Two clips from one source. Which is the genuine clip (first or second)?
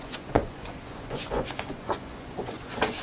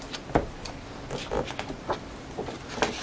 second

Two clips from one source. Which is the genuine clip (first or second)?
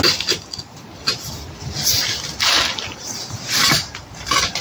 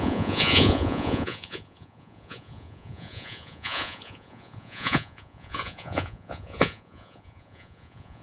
first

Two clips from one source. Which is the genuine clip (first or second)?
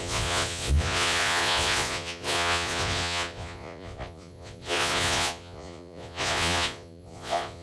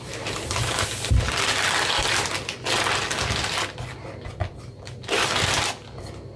second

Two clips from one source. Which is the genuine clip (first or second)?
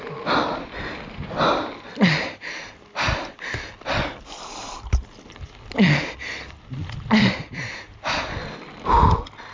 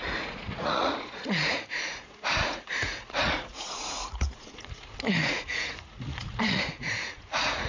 first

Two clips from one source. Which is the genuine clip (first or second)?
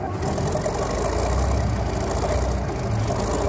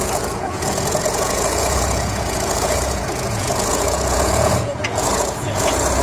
first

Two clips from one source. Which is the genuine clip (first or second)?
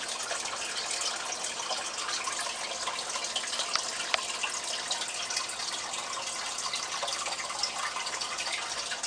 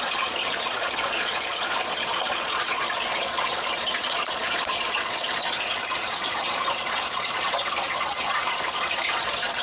first